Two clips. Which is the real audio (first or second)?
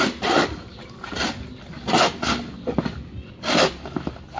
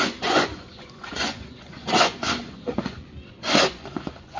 first